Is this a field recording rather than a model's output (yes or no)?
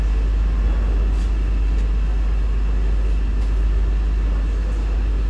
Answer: yes